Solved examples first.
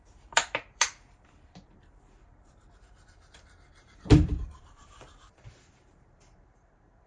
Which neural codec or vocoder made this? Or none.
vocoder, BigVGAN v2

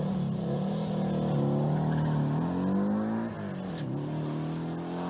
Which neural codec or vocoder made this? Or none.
none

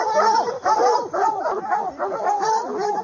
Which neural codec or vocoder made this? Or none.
vocoder, BigVGAN v2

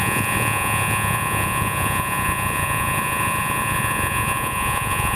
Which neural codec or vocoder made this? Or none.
vocoder, Vocos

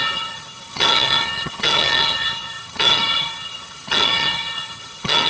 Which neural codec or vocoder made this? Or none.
vocoder, HiFi-GAN